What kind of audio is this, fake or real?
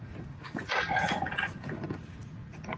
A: fake